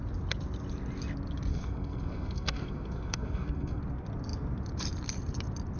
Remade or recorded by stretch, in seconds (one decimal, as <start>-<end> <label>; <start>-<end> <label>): 0.0-1.5 recorded; 1.5-3.8 remade; 3.8-5.8 recorded